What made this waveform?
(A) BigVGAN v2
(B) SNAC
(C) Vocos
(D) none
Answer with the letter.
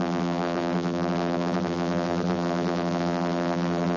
A